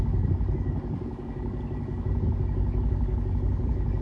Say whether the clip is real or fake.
fake